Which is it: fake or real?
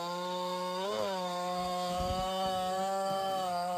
fake